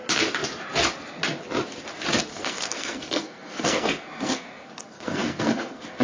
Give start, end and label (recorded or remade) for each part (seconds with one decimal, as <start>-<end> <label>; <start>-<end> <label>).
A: 0.0-2.3 recorded; 2.3-6.0 remade